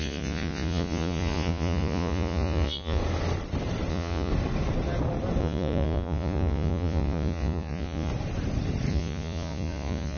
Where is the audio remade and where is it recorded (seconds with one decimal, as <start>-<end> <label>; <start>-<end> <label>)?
0.0-3.0 remade; 3.0-3.9 recorded; 3.9-4.3 remade; 4.3-5.4 recorded; 5.4-8.1 remade; 8.1-8.9 recorded; 8.9-10.2 remade